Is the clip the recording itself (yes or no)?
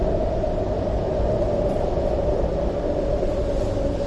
yes